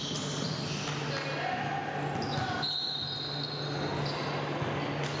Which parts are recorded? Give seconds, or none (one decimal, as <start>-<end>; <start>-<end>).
0.0-5.2

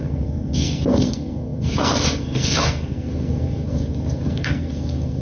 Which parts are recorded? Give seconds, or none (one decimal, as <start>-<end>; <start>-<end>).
none

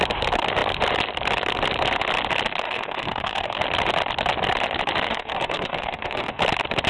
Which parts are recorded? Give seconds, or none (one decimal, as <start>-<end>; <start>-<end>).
0.0-2.6; 3.6-5.1; 6.4-6.9